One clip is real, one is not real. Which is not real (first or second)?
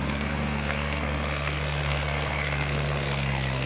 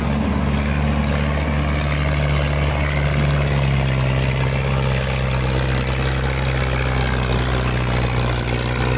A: first